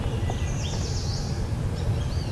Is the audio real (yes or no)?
yes